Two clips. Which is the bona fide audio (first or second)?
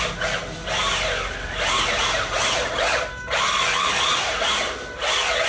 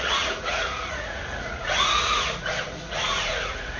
first